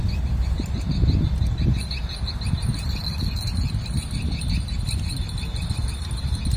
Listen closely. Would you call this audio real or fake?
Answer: real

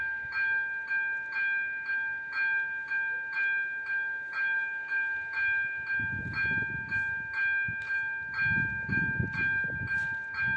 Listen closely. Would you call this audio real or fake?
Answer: real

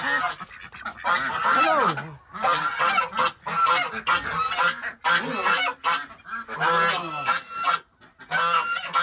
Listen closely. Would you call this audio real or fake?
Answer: real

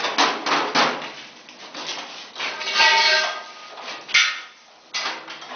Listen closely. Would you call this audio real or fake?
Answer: real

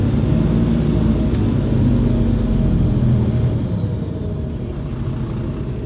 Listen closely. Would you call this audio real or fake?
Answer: real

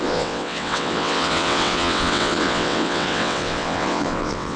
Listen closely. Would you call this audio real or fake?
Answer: fake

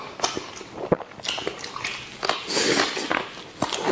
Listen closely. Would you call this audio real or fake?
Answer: real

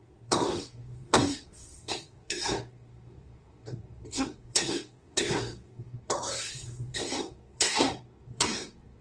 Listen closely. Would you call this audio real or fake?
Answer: fake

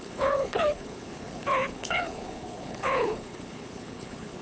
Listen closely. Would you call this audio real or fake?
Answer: fake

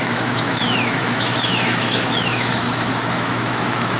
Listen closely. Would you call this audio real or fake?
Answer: fake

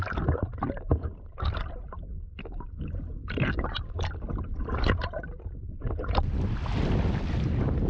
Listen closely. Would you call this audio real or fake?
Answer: real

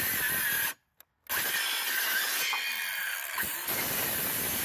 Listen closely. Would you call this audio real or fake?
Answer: real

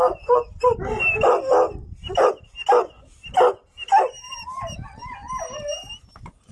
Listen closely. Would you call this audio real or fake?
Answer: real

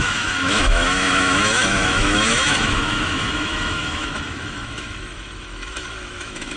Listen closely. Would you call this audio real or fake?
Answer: fake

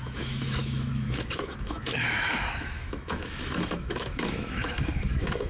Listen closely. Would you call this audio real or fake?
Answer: fake